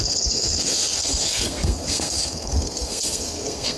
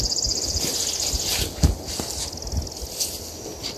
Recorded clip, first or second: second